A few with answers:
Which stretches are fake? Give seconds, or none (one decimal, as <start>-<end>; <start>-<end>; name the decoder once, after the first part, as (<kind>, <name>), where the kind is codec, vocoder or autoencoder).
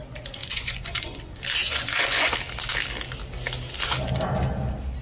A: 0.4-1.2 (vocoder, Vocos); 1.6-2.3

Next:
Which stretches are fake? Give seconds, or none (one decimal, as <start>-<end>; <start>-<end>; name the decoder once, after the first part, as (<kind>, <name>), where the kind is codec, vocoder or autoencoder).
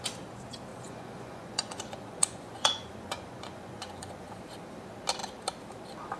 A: 0.7-4.4 (vocoder, Vocos)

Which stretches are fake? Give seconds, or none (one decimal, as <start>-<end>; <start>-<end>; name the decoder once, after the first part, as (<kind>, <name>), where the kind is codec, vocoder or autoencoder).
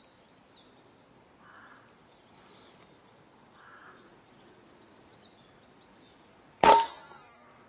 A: 3.8-6.7 (vocoder, Vocos)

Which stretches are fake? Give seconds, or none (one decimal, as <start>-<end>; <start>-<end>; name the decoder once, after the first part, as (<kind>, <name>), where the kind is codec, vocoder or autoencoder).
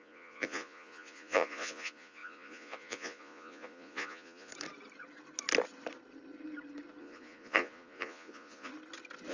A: 0.0-4.5 (vocoder, Vocos); 7.0-8.7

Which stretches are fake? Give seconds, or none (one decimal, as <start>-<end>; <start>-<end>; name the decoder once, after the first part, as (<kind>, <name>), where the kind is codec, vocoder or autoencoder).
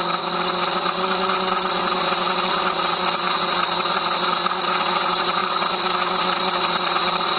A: 0.0-7.4 (vocoder, Vocos)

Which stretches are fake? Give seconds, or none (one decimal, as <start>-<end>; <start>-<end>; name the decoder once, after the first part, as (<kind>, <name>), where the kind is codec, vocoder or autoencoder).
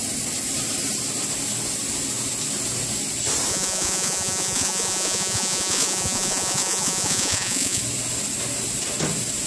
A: 3.5-7.8 (vocoder, Vocos)